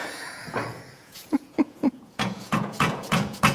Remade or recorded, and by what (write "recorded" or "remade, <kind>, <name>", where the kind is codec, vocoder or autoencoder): remade, vocoder, Vocos